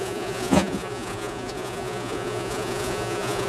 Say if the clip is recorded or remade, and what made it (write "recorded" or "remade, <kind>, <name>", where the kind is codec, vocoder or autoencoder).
remade, vocoder, Vocos